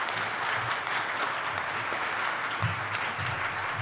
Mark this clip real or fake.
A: real